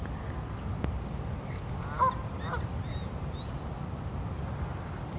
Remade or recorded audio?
recorded